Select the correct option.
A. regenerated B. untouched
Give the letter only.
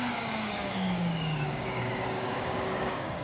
A